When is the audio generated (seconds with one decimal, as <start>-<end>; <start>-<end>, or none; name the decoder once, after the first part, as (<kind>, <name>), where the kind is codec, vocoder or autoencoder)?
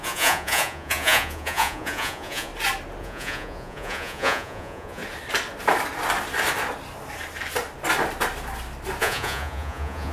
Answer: 0.0-2.5 (vocoder, Vocos); 3.0-5.0; 9.0-10.1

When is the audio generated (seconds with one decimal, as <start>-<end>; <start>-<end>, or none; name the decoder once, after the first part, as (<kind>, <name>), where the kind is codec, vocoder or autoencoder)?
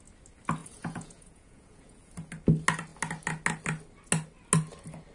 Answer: 0.6-2.1 (vocoder, Vocos)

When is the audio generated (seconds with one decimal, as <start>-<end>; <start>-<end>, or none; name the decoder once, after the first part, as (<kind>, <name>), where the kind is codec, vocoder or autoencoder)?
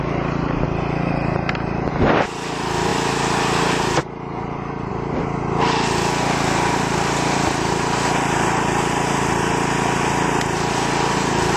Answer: none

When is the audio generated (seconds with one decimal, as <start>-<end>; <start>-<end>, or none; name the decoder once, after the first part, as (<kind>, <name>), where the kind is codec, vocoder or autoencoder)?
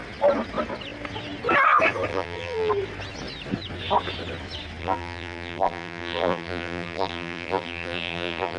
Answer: 2.1-2.7 (vocoder, BigVGAN v2); 4.8-8.6